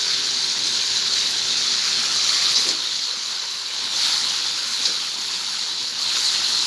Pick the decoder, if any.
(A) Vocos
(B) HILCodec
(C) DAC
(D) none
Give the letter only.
B